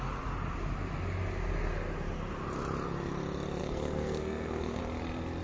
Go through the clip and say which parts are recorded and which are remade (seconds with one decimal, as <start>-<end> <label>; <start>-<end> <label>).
0.0-3.6 recorded; 3.6-4.8 remade; 4.8-5.4 recorded